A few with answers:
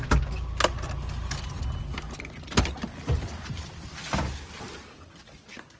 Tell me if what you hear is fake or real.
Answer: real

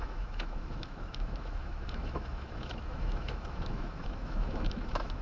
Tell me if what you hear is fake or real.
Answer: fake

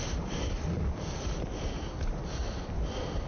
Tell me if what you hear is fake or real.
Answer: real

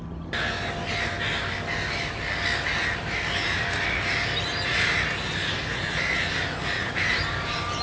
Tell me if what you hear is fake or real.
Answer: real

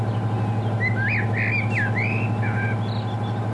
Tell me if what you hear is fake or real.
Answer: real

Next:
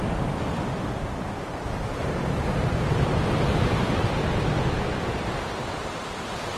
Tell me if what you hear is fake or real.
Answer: fake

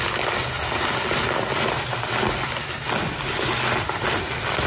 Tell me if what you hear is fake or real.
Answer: real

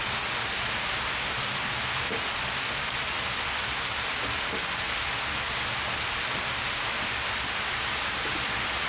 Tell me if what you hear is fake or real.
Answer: real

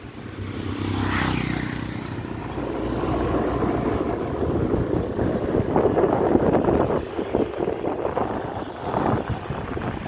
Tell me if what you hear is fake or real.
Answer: real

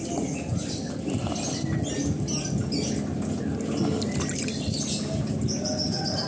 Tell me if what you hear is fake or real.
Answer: real